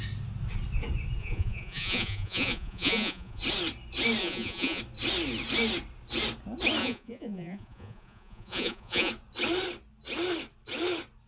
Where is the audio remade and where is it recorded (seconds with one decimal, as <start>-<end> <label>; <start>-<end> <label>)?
0.0-1.2 recorded; 1.2-3.4 remade; 3.4-4.2 recorded; 4.2-4.8 remade; 4.8-6.8 recorded; 6.8-9.1 remade; 9.1-11.3 recorded